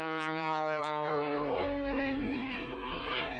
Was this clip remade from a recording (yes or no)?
yes